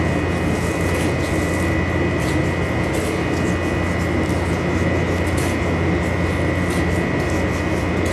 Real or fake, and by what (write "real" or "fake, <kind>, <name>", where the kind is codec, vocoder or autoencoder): real